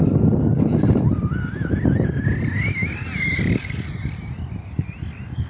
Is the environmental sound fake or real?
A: real